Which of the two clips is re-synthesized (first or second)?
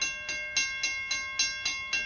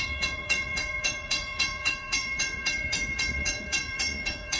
second